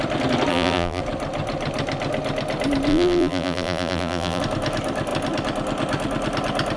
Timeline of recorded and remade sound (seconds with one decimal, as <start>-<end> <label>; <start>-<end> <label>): 0.0-0.5 recorded; 0.5-1.0 remade; 1.0-2.9 recorded; 2.9-4.4 remade; 4.4-6.8 recorded

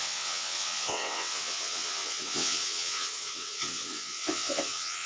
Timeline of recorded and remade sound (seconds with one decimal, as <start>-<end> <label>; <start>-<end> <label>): 0.0-5.1 remade

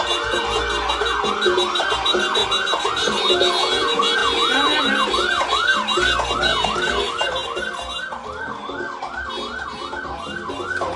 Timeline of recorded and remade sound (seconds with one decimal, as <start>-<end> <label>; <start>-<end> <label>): 0.0-11.0 recorded

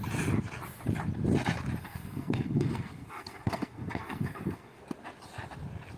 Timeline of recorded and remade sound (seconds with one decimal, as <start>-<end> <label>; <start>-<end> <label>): 0.0-1.8 recorded; 1.8-4.8 remade; 4.8-6.0 recorded

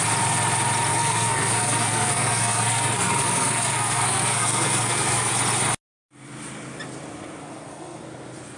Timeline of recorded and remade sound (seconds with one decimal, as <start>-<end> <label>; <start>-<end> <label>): 0.0-0.9 recorded; 0.9-5.3 remade; 5.3-7.4 recorded; 7.4-8.0 remade; 8.0-8.6 recorded

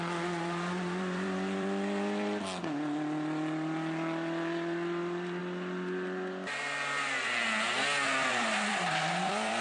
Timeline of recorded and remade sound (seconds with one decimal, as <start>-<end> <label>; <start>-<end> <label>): 0.0-5.4 remade; 5.4-8.3 recorded; 8.3-9.6 remade

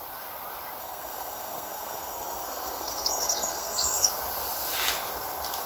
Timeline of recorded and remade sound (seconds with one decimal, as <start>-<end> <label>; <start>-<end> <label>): 0.0-0.8 recorded; 0.8-4.1 remade; 4.1-5.7 recorded

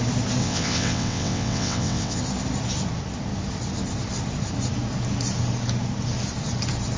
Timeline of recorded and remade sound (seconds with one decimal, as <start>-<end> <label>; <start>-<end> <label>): 0.0-0.4 recorded; 0.4-2.2 remade; 2.2-7.0 recorded